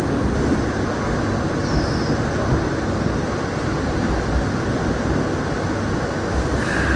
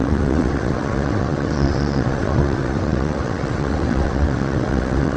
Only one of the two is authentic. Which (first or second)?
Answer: first